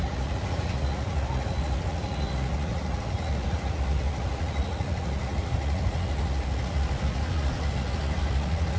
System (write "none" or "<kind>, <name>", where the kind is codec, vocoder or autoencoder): vocoder, Vocos